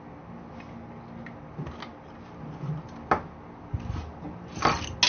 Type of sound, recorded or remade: recorded